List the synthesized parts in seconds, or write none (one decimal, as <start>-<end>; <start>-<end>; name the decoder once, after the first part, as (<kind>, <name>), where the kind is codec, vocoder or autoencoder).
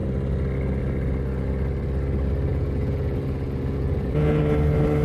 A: 2.5-4.4 (vocoder, Vocos)